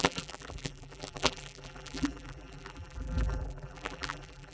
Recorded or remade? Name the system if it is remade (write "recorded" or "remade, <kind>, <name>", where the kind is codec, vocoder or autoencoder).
remade, vocoder, BigVGAN v2